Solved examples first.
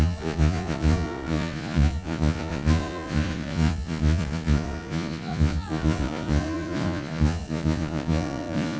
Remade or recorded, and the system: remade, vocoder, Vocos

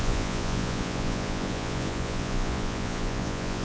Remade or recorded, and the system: remade, vocoder, Vocos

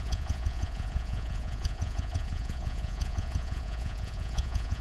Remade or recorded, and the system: remade, vocoder, Vocos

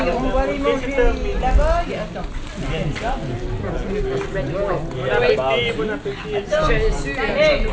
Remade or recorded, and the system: recorded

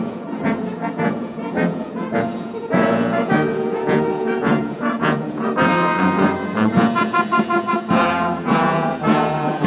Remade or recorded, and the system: remade, vocoder, Vocos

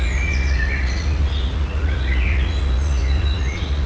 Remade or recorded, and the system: remade, vocoder, Vocos